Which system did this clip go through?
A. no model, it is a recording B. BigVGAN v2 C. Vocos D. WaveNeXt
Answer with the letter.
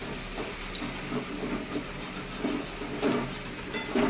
A